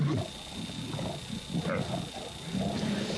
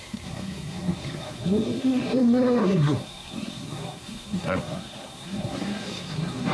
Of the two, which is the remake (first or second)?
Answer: second